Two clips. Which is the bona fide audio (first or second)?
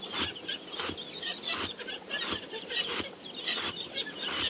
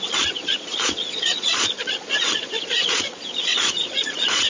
first